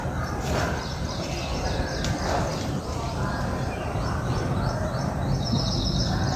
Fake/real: real